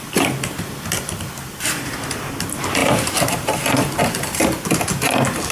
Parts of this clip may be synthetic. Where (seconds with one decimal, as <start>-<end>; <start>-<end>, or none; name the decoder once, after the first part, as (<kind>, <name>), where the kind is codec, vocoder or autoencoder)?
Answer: 2.8-4.4 (vocoder, BigVGAN v2)